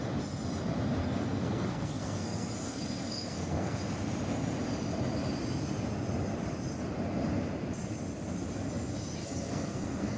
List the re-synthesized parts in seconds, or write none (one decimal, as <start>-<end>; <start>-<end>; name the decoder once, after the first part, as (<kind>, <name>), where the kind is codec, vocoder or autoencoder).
1.0-3.8 (codec, SNAC); 9.2-10.2